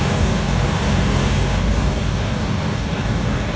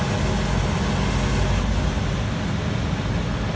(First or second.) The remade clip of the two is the first